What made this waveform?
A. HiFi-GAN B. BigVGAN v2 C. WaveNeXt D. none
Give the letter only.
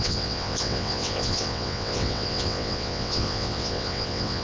C